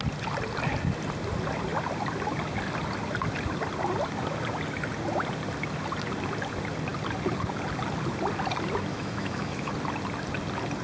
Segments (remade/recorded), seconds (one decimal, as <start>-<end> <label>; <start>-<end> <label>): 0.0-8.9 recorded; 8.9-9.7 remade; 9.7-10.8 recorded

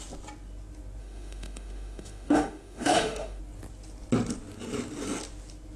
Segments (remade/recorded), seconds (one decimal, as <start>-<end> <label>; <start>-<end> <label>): 0.0-1.0 recorded; 1.0-3.4 remade; 3.4-5.8 recorded

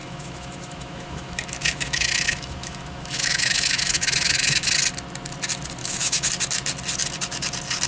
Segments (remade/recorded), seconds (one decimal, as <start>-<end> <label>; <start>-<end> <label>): 0.0-4.7 remade; 4.7-5.8 recorded; 5.8-6.3 remade; 6.3-7.9 recorded

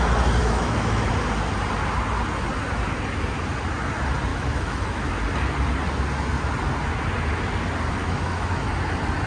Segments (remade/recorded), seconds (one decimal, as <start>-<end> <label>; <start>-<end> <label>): 0.0-0.4 recorded; 0.4-1.1 remade; 1.1-4.3 recorded; 4.3-5.1 remade; 5.1-8.0 recorded; 8.0-8.7 remade; 8.7-9.3 recorded